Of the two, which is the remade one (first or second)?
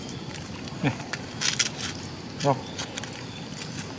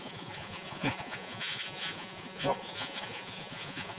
second